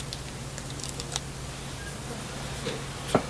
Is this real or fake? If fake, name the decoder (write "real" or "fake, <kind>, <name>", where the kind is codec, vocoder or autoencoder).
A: real